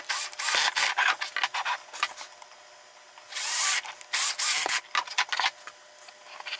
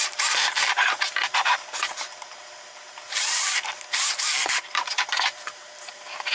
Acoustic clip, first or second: first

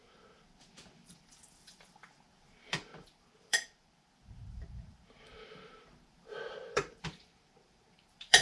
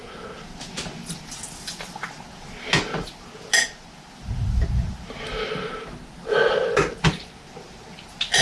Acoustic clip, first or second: second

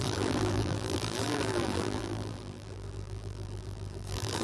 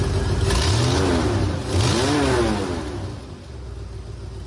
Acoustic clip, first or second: second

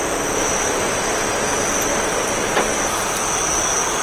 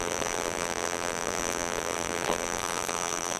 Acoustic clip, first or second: first